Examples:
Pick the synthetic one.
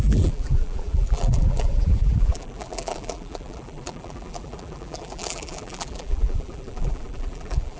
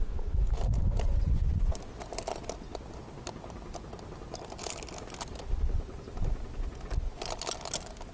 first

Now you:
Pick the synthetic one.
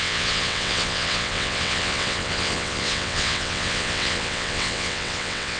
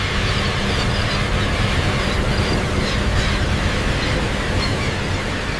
first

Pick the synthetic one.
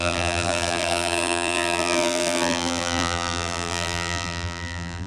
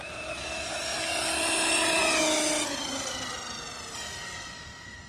first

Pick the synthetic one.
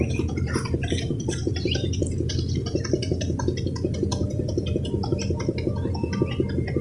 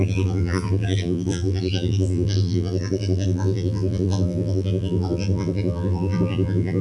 second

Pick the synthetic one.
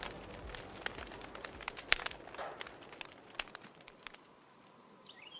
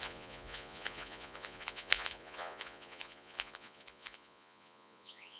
second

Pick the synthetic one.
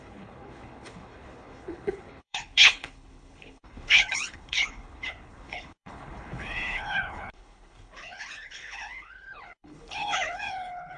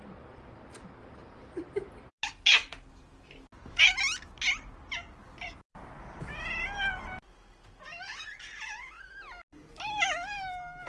first